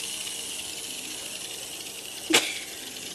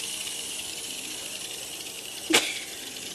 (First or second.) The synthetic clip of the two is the second